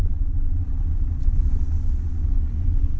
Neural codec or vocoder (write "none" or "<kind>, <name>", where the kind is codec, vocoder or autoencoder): vocoder, Vocos